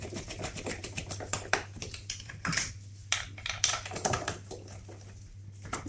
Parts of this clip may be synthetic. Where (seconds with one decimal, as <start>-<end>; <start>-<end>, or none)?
0.8-4.3

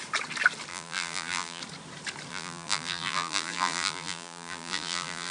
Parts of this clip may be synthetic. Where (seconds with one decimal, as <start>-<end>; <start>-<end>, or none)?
0.7-1.6; 2.3-5.3